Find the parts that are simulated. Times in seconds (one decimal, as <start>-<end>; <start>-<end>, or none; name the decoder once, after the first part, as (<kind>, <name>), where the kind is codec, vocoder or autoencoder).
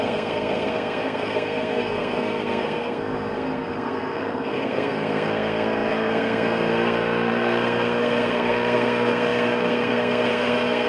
0.0-10.9 (codec, SNAC)